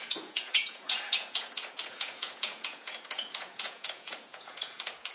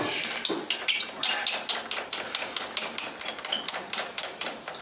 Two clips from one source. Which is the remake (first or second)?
first